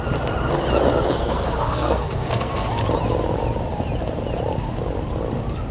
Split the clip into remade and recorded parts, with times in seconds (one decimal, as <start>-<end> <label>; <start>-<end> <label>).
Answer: 0.0-1.2 recorded; 1.2-2.7 remade; 2.7-5.7 recorded